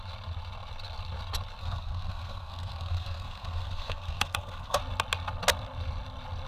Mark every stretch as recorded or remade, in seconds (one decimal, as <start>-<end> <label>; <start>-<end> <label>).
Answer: 0.0-1.6 recorded; 1.6-4.8 remade; 4.8-6.5 recorded